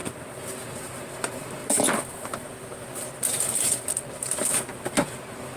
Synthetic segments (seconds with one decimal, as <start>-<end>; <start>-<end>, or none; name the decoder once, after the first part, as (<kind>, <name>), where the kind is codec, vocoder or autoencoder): none